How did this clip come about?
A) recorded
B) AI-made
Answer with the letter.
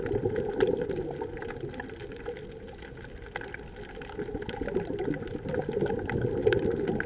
A